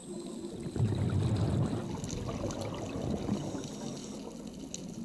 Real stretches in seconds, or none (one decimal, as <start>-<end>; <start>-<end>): 0.0-5.0